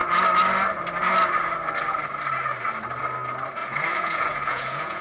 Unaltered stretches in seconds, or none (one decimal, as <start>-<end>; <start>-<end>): 0.0-3.6